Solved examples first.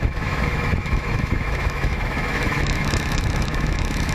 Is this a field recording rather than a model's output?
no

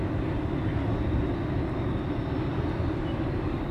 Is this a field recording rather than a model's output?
yes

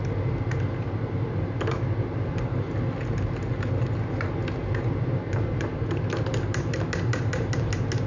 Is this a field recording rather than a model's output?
yes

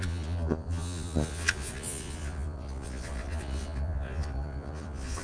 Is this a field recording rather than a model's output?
no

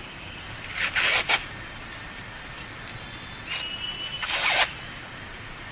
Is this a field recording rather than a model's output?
yes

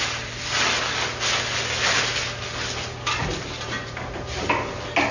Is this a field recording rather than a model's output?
yes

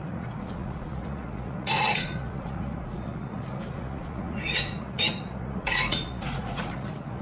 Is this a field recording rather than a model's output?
no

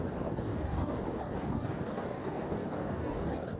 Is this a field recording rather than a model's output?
no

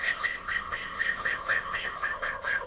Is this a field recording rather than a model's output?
no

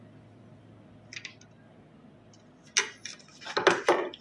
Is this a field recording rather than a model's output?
yes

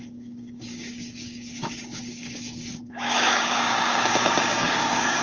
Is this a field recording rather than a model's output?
no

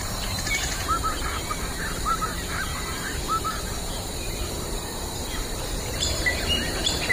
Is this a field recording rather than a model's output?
no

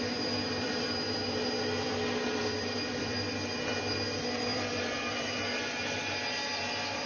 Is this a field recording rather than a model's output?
no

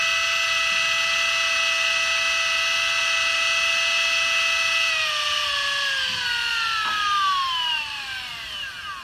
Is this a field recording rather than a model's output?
yes